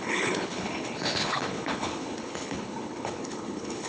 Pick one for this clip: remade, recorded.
remade